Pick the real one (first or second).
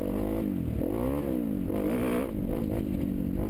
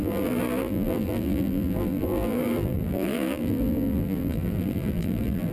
first